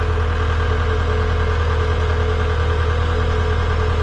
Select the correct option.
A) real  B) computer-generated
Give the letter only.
A